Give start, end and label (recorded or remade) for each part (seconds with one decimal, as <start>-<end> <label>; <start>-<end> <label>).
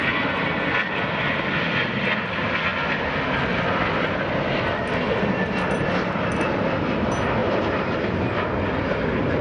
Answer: 0.0-7.4 recorded; 7.4-8.2 remade; 8.2-9.4 recorded